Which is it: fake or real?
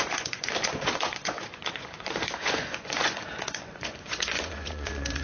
fake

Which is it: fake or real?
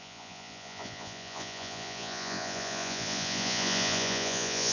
fake